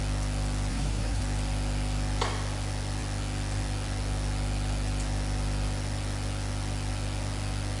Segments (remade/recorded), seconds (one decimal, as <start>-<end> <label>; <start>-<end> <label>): 0.0-0.7 recorded; 0.7-1.2 remade; 1.2-7.8 recorded